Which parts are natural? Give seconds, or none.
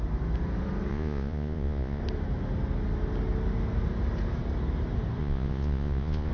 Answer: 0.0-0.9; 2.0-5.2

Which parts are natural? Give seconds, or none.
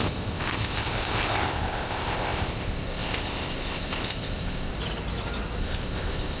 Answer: 4.7-5.6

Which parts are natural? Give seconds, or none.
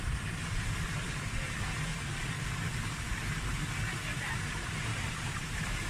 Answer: 1.9-4.4